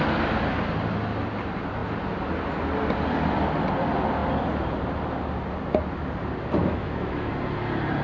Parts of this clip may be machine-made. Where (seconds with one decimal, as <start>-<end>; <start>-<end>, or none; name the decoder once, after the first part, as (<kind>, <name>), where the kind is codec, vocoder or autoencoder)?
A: 6.6-7.3 (autoencoder, DAC-VAE)